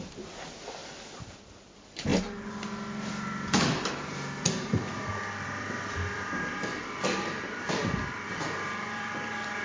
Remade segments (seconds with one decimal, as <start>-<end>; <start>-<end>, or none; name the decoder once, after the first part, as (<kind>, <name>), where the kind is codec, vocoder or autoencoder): 0.0-0.8 (vocoder, BigVGAN v2); 1.3-2.1; 3.1-9.6